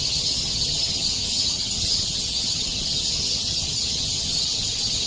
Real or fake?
fake